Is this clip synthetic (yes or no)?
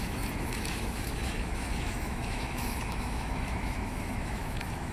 yes